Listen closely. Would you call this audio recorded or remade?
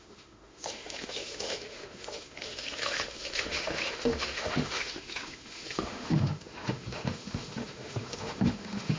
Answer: remade